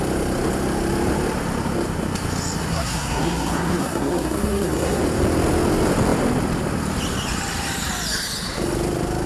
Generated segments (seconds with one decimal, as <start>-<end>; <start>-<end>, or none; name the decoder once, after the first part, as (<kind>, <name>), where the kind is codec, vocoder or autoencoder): 2.7-5.0 (codec, SNAC)